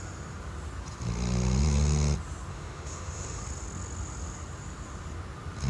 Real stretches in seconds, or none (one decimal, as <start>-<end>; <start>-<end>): 0.0-2.5; 3.4-5.7